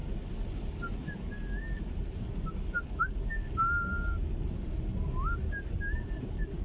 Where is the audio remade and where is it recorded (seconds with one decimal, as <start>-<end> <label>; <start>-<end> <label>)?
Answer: 0.0-6.6 recorded